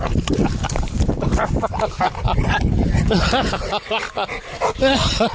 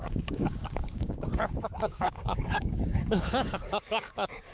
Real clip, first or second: first